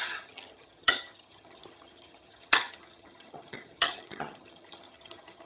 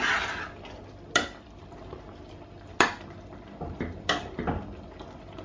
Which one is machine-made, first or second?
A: first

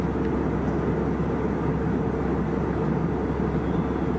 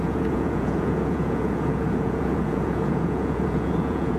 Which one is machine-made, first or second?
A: second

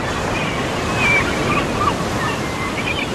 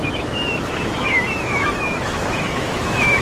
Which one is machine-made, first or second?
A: second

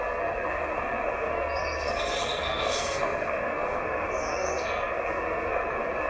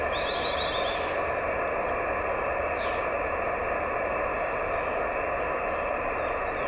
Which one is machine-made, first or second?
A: first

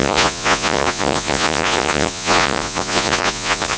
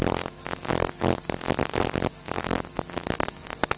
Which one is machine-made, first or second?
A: first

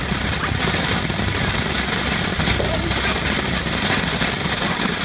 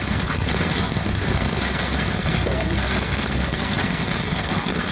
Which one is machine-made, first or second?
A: second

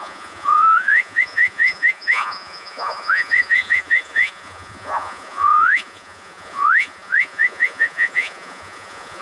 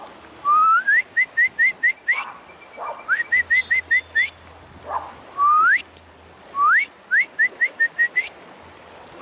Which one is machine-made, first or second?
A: first